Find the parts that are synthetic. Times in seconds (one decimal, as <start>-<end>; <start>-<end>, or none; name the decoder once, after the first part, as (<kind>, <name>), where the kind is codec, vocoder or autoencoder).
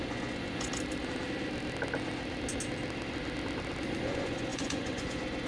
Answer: 0.0-0.7 (vocoder, Vocos); 4.0-5.5